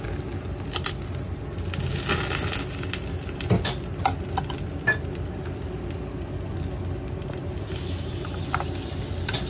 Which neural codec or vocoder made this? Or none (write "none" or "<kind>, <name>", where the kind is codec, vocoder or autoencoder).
none